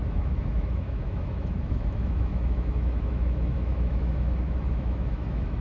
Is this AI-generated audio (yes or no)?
yes